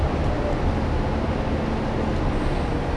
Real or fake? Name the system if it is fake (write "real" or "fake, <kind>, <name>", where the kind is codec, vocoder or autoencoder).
real